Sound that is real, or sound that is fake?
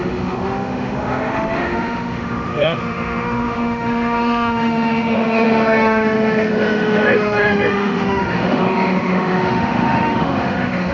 fake